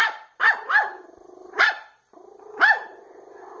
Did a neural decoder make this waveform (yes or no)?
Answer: no